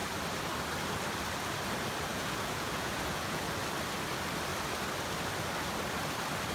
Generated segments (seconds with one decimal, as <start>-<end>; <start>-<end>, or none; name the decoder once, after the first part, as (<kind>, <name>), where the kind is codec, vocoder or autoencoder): 2.1-3.4 (vocoder, Vocos)